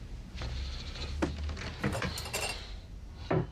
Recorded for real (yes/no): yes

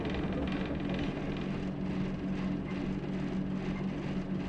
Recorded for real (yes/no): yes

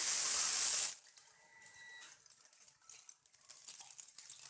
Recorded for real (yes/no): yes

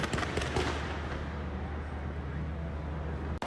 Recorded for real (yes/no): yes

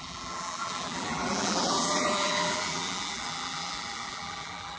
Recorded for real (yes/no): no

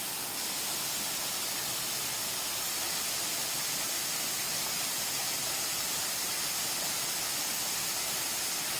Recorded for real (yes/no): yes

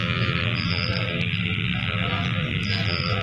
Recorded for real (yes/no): no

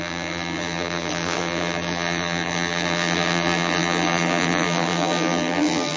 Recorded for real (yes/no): no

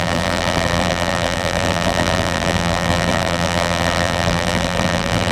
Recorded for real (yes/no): no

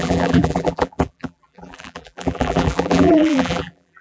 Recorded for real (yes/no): no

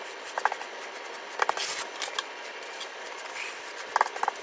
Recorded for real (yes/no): yes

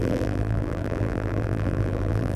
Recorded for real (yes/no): no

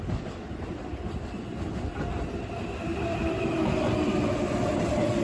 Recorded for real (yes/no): no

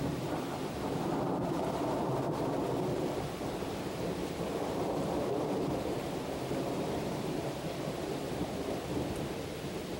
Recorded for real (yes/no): no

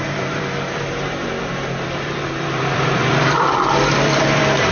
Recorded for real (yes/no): no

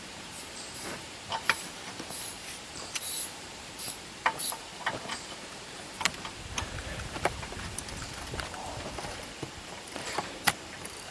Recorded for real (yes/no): no